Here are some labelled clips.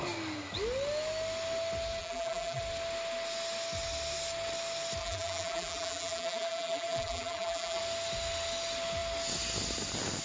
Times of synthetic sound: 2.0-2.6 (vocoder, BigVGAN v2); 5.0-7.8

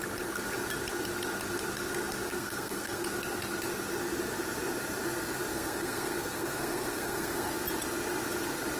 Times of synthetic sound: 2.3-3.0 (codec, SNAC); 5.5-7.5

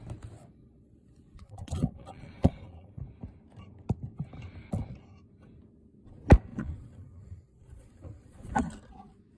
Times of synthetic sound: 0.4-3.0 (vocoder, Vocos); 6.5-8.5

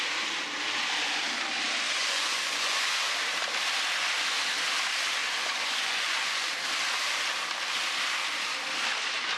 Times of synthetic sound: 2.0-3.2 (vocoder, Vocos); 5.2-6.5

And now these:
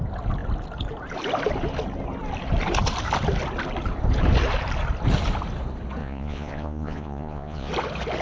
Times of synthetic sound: 6.0-7.7 (vocoder, Vocos)

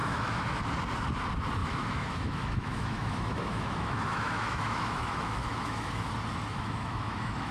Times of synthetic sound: 0.0-0.6 (autoencoder, DAC-VAE); 1.6-6.1; 6.5-7.5

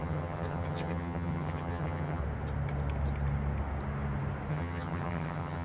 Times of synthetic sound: 0.0-2.2 (vocoder, HiFi-GAN); 4.5-5.6

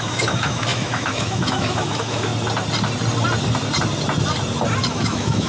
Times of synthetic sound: 0.0-2.3 (autoencoder, DAC-VAE); 5.0-5.5